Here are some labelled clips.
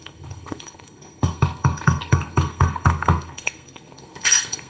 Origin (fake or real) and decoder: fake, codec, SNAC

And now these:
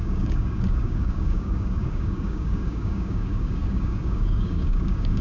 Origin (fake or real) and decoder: fake, codec, DAC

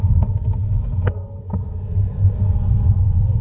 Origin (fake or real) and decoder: fake, codec, SNAC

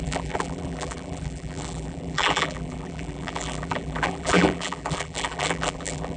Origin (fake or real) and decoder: fake, vocoder, BigVGAN v2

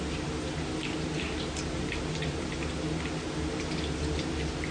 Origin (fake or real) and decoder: real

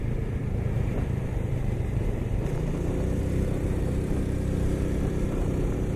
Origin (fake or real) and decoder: fake, vocoder, BigVGAN v2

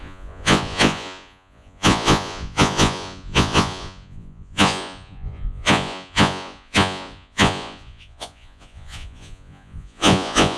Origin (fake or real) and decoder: fake, vocoder, Vocos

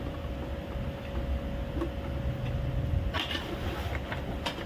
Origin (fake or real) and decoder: real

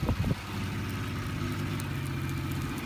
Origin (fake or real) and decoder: real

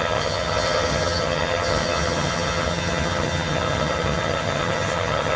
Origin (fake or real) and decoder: fake, vocoder, HiFi-GAN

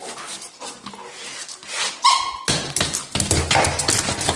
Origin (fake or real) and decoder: real